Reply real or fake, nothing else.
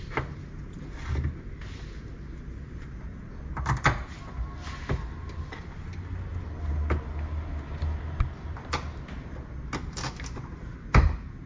real